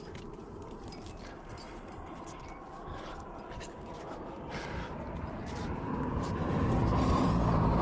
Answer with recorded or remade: remade